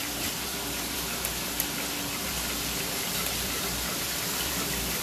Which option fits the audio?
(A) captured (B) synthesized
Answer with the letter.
B